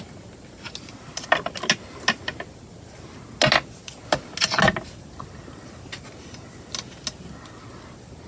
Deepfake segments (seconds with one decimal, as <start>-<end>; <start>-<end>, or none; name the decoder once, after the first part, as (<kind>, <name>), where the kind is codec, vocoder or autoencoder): none